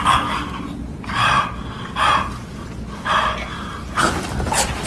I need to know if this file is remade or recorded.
recorded